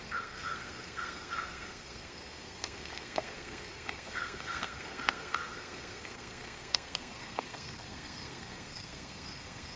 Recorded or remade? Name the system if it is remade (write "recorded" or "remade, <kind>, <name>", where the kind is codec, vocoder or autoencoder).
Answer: remade, codec, SNAC